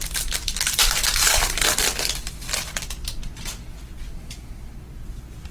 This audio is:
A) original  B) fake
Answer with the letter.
B